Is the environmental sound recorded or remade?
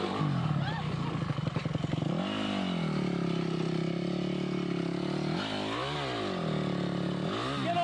recorded